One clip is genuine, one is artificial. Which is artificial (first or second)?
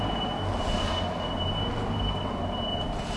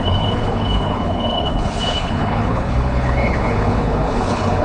second